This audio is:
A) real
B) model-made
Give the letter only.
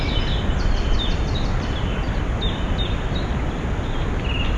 A